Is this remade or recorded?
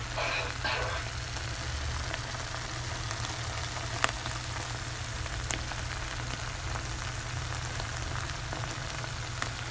recorded